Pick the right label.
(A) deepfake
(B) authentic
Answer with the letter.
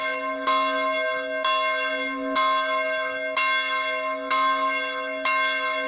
B